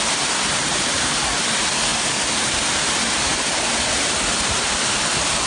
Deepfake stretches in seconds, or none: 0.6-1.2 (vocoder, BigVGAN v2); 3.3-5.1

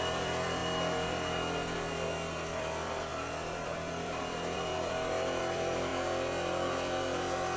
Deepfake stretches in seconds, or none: 0.0-0.6 (vocoder, BigVGAN v2); 2.6-5.9

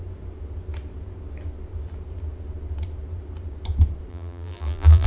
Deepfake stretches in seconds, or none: 4.1-5.1 (vocoder, BigVGAN v2)